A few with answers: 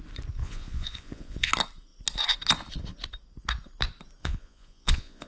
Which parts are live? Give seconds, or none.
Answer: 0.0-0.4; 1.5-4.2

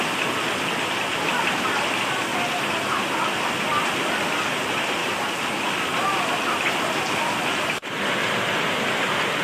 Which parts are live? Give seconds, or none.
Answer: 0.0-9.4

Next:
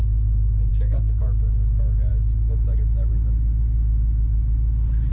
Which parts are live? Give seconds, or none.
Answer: 0.0-0.7; 1.2-5.1